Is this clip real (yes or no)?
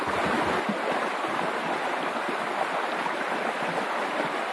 yes